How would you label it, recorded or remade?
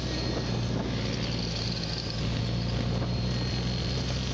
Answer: recorded